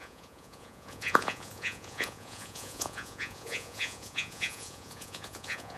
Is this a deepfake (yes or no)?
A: yes